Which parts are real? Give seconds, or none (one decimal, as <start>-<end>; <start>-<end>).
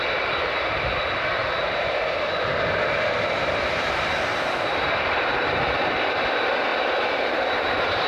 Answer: 1.4-1.9